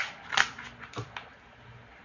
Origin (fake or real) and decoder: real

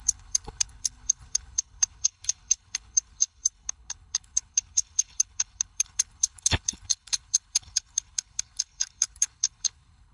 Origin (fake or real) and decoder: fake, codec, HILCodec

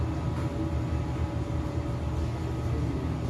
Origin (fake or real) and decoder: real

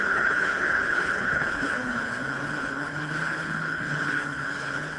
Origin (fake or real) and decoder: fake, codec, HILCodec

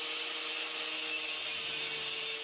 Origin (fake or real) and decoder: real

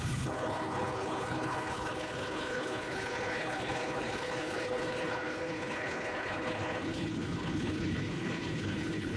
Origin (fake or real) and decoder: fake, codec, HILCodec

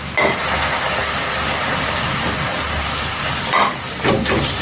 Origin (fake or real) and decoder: real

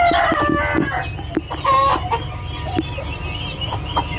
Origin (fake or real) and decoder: real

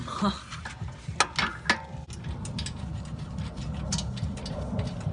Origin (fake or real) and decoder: real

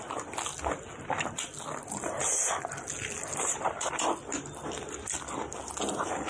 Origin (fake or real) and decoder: real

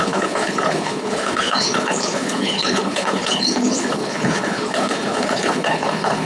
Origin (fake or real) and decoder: fake, codec, HILCodec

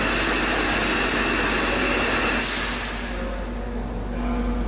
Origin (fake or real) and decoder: real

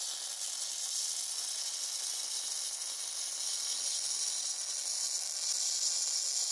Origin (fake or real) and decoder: real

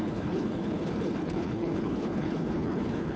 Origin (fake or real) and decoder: fake, codec, HILCodec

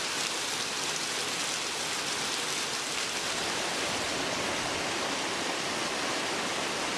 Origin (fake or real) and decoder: real